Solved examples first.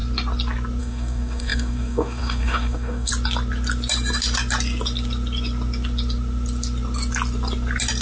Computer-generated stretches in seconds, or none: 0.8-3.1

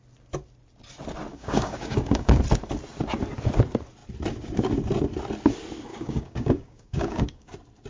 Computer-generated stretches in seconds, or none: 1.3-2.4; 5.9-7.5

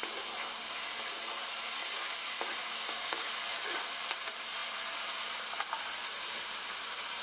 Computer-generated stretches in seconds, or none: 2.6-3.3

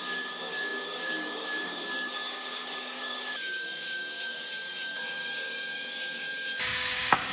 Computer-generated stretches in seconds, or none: 0.0-7.3